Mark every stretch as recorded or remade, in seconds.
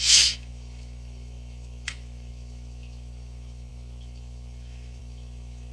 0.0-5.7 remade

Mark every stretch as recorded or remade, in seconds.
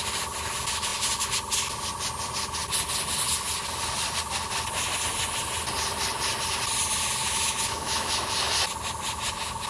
0.0-7.2 recorded; 7.2-8.1 remade; 8.1-9.7 recorded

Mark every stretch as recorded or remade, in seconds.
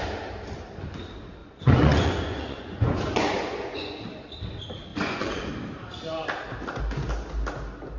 0.0-1.4 recorded; 1.4-4.0 remade; 4.0-4.9 recorded; 4.9-5.5 remade; 5.5-8.0 recorded